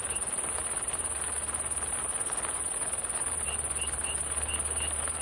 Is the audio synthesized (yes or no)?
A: no